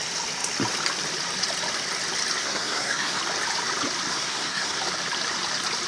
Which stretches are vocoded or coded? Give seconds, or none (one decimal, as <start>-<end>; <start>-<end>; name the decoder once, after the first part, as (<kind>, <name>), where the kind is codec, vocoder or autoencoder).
2.4-3.2 (codec, SNAC); 4.1-4.8